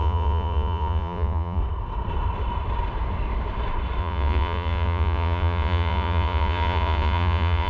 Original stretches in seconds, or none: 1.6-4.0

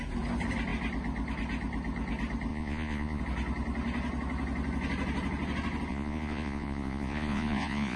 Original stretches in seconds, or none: 0.0-2.5; 3.2-5.9

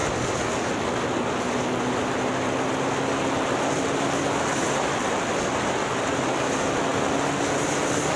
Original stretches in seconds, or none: 0.0-8.2